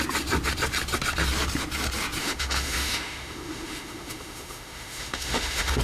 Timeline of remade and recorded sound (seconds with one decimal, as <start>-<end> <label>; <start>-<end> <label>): 0.0-2.2 recorded; 2.2-5.8 remade